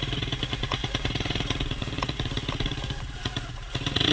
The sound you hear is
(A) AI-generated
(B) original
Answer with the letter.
A